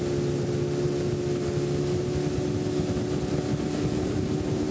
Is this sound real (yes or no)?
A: yes